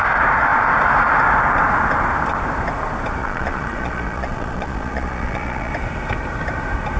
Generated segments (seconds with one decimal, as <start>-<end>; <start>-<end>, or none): 3.2-5.7